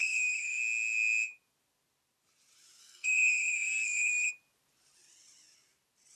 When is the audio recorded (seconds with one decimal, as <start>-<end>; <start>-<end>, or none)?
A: 0.6-2.8; 4.3-6.2